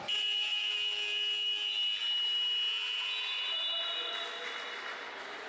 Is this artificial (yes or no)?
no